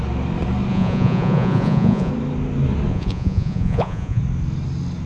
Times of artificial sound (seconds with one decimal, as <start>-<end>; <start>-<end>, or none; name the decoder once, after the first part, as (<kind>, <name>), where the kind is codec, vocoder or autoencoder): 0.7-2.1 (vocoder, Vocos); 2.9-4.2